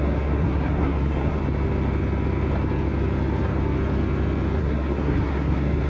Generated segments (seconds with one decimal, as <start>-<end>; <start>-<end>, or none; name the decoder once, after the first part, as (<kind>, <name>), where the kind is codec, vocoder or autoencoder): 0.0-1.4 (codec, SNAC); 4.6-5.9